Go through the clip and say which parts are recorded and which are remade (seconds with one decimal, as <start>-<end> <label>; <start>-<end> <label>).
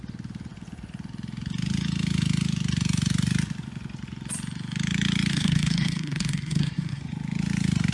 0.0-5.3 recorded; 5.3-7.0 remade; 7.0-7.9 recorded